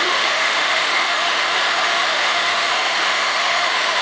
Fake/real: fake